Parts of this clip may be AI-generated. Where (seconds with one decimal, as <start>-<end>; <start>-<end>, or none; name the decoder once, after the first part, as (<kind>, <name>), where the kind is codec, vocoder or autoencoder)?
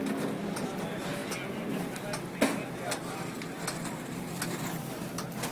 none